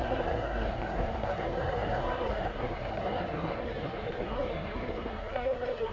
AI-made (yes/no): yes